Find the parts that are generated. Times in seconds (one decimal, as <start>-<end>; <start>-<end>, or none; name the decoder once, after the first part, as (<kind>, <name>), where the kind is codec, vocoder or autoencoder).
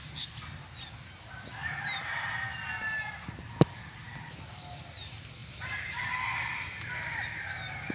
5.4-6.0 (vocoder, BigVGAN v2)